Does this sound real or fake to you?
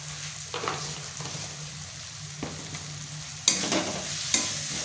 real